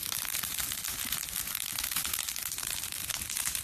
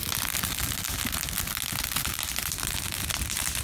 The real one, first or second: second